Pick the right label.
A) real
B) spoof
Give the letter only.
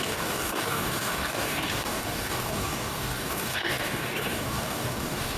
B